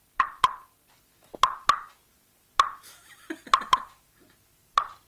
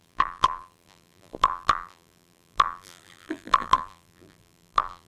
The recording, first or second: first